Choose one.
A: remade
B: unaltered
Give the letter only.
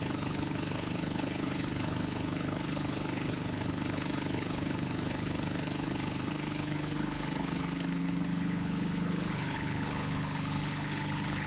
A